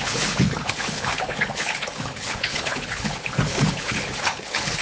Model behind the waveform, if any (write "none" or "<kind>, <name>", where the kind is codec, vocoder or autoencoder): codec, HILCodec